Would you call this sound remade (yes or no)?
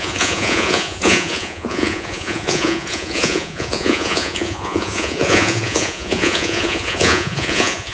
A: yes